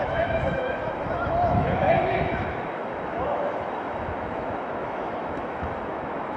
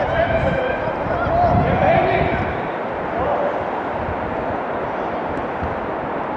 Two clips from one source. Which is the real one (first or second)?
second